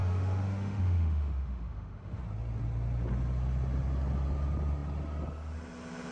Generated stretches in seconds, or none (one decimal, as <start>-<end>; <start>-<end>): 0.0-2.2